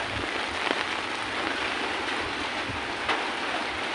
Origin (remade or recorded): recorded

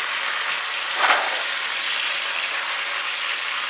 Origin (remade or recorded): recorded